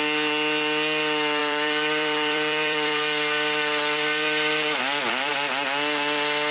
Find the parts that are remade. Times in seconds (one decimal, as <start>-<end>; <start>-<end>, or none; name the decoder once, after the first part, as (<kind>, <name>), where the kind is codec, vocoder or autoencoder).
1.4-5.3 (vocoder, BigVGAN v2)